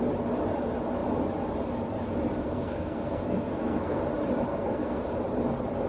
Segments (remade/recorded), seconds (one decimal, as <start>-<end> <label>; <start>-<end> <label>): 0.0-2.4 recorded; 2.4-4.0 remade; 4.0-4.5 recorded; 4.5-5.0 remade; 5.0-5.9 recorded